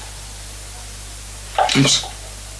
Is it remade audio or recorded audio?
recorded